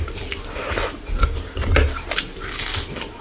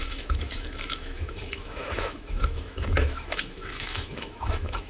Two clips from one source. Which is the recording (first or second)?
first